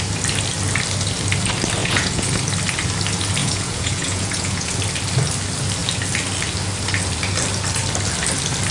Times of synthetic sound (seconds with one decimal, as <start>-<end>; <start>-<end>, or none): 1.8-2.4; 3.4-4.7